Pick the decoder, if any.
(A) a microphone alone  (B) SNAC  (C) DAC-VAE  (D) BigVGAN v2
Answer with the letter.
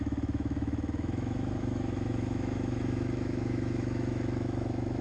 C